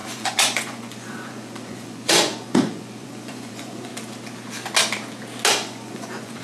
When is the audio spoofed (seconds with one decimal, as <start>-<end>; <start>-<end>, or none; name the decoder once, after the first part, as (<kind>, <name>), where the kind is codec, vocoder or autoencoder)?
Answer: 0.0-3.9 (vocoder, Vocos); 5.5-6.4